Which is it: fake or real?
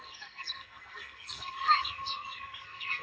fake